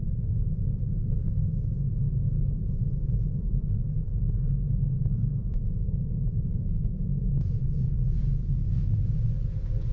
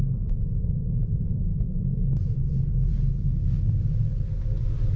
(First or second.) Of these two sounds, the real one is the second